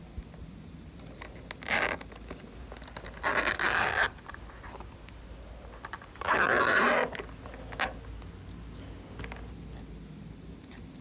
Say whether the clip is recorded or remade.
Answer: recorded